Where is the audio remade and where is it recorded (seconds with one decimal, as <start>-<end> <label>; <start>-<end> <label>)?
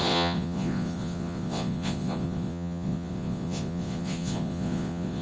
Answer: 0.0-5.2 remade